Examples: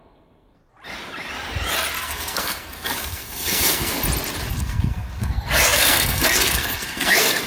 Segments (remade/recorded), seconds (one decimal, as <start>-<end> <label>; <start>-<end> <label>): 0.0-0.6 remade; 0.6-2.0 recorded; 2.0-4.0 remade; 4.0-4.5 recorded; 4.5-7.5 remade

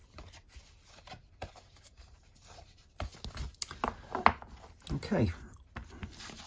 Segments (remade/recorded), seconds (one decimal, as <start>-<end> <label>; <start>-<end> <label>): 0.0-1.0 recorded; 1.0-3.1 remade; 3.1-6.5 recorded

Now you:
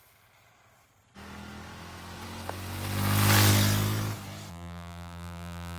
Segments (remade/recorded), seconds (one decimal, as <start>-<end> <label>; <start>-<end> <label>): 0.0-4.5 recorded; 4.5-5.8 remade

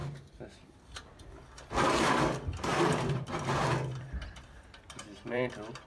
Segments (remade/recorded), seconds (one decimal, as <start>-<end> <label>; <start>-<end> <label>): 0.0-0.6 remade; 0.6-2.7 recorded; 2.7-5.9 remade

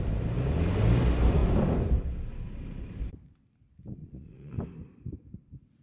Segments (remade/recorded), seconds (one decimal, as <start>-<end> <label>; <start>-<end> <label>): 0.0-4.0 recorded; 4.0-4.6 remade; 4.6-5.8 recorded

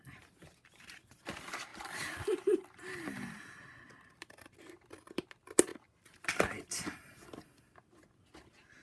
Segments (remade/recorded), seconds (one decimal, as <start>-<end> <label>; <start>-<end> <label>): 0.0-1.7 recorded; 1.7-4.2 remade; 4.2-8.8 recorded